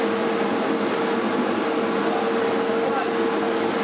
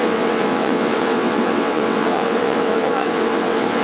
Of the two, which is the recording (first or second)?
first